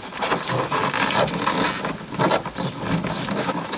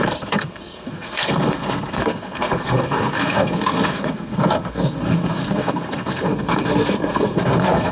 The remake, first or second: second